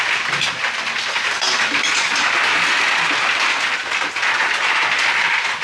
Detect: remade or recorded recorded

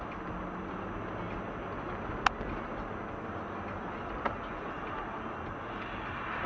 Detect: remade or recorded recorded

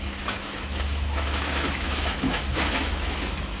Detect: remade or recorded remade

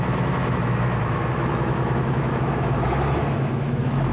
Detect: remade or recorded remade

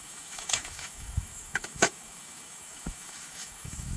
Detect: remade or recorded remade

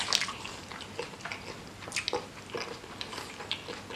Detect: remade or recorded recorded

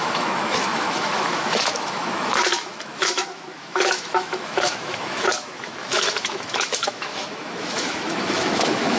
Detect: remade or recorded remade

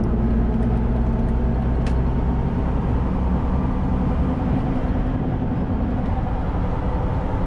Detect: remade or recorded recorded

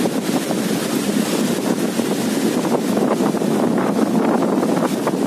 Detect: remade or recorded recorded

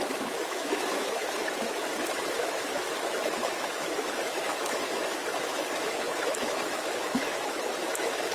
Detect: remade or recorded remade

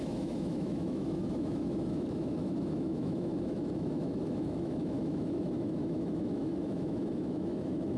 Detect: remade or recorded remade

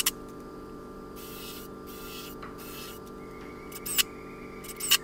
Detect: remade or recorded recorded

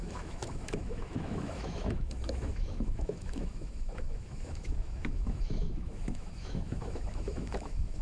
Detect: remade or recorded remade